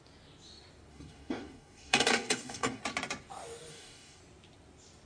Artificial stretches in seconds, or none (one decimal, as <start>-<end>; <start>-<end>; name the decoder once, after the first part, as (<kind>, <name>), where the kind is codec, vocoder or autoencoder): 0.9-2.8 (codec, DAC); 3.7-4.2

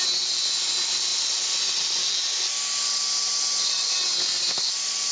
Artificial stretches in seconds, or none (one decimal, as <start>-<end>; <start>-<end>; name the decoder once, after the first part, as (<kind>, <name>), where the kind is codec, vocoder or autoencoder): none

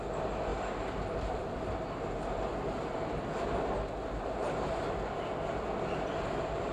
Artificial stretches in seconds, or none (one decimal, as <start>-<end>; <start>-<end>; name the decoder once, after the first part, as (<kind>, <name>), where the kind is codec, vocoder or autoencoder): none

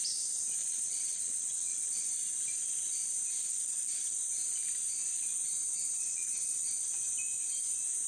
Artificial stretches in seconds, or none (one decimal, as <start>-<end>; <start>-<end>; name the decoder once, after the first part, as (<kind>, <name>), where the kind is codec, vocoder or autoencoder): 0.6-2.1 (vocoder, WaveNeXt); 3.4-4.1; 6.0-6.6

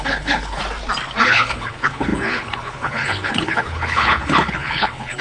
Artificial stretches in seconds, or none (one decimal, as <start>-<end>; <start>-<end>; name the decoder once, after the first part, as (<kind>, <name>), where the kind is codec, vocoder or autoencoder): 0.0-0.6 (codec, HILCodec); 1.2-5.2